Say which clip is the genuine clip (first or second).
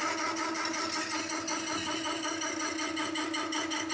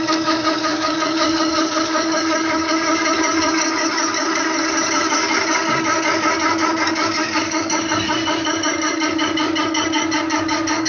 first